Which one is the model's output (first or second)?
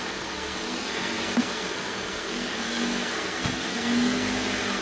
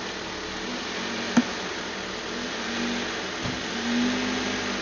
first